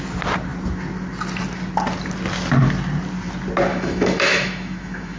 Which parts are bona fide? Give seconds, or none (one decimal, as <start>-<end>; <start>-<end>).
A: 0.0-3.7

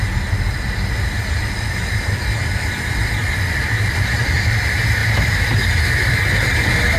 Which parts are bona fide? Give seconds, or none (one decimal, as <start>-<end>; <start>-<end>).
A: 0.0-3.0; 4.2-5.0; 5.8-7.0

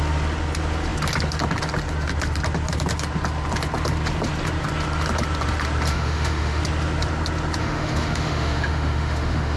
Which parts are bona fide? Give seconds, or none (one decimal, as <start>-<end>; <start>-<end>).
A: 0.0-5.9; 6.6-7.6

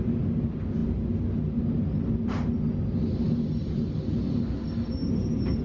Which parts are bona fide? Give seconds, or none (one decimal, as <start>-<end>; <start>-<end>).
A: 0.0-5.6

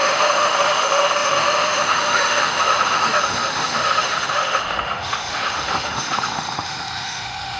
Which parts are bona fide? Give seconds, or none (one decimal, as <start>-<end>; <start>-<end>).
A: none

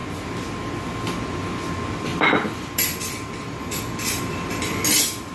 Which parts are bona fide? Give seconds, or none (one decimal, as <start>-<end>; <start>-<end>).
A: 0.0-2.1; 4.5-5.3

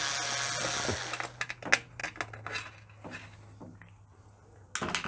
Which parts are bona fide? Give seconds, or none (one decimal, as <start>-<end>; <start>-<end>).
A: 0.0-5.1

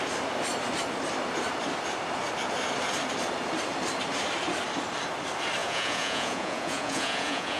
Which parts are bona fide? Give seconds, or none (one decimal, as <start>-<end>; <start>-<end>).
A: 0.0-5.6